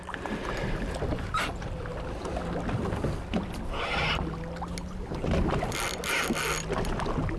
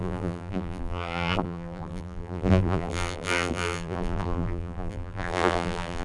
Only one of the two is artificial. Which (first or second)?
second